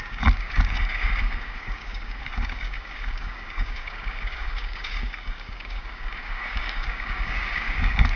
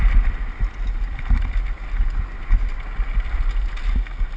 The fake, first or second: first